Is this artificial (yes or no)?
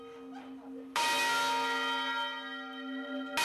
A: no